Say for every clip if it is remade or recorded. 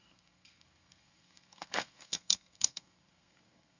remade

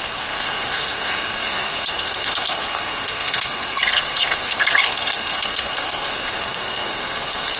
remade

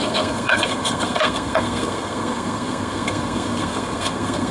remade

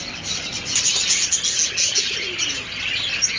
recorded